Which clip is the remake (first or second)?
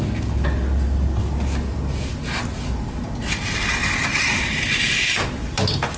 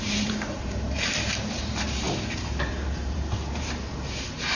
second